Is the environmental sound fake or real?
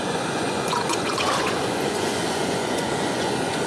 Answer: fake